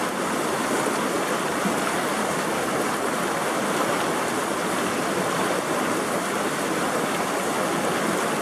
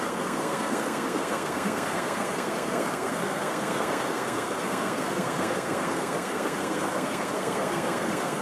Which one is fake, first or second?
second